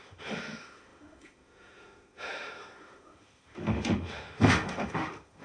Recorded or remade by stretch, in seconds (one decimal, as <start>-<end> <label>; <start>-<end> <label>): 0.0-5.4 remade